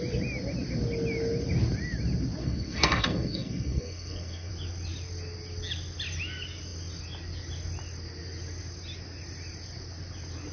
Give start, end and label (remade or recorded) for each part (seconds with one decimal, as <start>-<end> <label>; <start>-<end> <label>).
0.0-2.4 recorded; 2.4-4.5 remade; 4.5-10.5 recorded